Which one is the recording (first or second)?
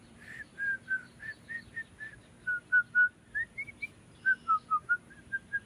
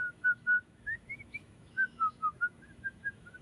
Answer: first